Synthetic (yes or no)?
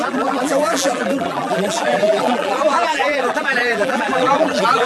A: yes